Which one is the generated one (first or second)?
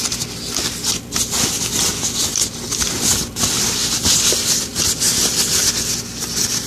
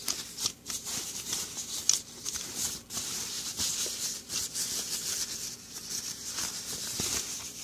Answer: second